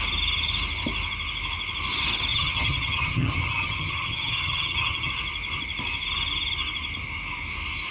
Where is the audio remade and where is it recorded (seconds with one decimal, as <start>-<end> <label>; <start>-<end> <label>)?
0.0-2.3 recorded; 2.3-5.1 remade; 5.1-7.9 recorded